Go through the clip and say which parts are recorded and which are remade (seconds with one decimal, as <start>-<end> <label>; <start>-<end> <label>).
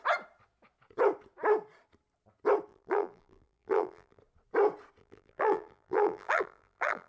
0.0-2.7 recorded; 2.7-4.2 remade; 4.2-5.0 recorded; 5.0-7.1 remade